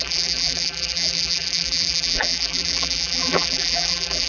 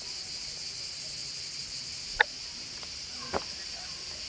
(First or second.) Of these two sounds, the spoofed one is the first